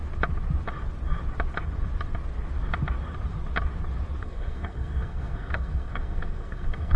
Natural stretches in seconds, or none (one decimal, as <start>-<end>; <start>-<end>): 0.0-4.2